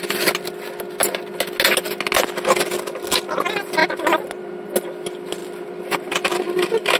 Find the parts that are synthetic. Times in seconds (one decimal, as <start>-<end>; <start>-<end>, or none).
3.8-4.5